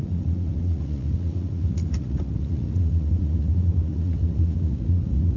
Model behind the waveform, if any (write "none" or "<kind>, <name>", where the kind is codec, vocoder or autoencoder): vocoder, Vocos